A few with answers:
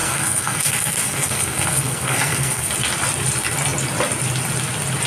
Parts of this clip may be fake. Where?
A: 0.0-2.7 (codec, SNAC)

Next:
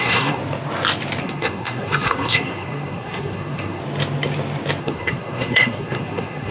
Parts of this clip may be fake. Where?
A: 0.0-0.4 (codec, SNAC); 1.2-3.8; 4.8-6.5

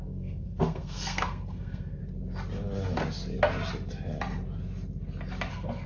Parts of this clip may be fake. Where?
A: 0.0-2.0 (codec, SNAC); 5.5-5.9

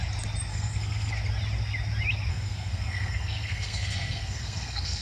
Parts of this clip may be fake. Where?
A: 0.5-1.1 (codec, SNAC); 2.3-5.0